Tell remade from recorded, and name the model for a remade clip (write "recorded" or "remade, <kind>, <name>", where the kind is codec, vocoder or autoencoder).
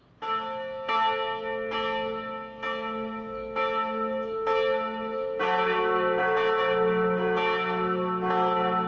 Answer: recorded